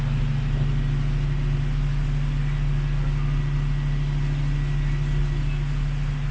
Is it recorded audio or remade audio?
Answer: recorded